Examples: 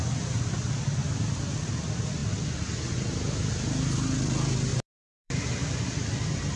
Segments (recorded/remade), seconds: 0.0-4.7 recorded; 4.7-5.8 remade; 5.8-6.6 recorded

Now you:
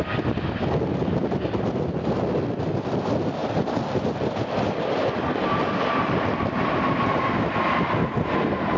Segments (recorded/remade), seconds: 0.0-8.8 recorded